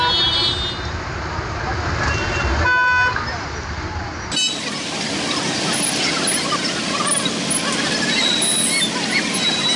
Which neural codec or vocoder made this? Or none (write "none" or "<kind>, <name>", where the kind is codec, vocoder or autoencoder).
none